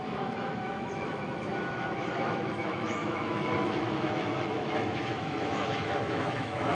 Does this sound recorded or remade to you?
remade